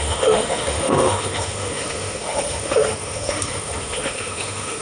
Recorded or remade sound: remade